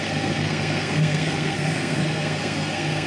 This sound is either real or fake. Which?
fake